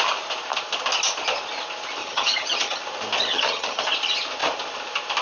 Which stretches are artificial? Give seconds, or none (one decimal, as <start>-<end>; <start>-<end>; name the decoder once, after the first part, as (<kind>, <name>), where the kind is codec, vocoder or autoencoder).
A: 2.0-2.8 (vocoder, HiFi-GAN); 3.3-3.8